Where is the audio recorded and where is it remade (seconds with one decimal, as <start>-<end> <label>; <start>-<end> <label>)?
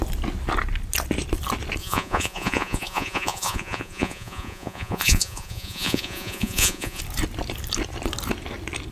0.0-1.8 recorded; 1.8-7.0 remade; 7.0-8.9 recorded